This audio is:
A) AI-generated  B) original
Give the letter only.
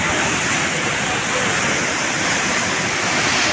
B